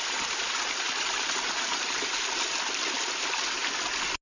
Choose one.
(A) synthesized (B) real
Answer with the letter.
B